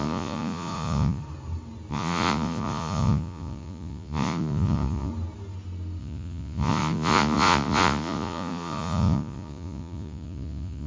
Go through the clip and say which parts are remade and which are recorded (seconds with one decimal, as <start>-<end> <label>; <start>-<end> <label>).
0.0-1.2 remade; 1.2-1.9 recorded; 1.9-5.1 remade; 5.1-6.0 recorded; 6.0-10.9 remade